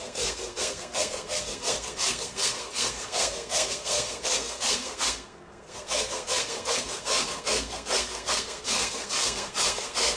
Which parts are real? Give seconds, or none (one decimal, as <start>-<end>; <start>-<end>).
none